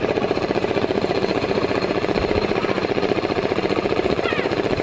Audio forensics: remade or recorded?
remade